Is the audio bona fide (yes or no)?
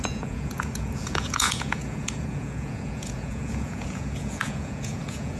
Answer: no